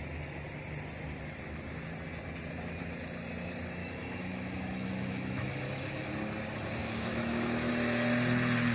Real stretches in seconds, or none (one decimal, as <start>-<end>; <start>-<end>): 0.0-3.8; 6.1-6.8; 7.7-8.7